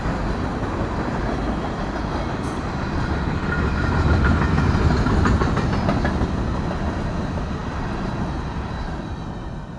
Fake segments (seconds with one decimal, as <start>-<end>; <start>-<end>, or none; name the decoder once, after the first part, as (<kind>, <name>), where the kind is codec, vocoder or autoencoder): none